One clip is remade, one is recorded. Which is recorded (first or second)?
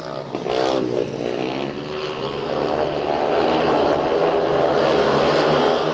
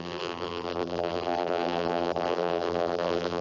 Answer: first